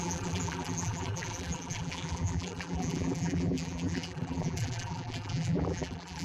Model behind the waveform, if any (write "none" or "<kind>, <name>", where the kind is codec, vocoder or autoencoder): vocoder, BigVGAN v2